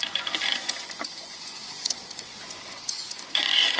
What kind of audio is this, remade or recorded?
remade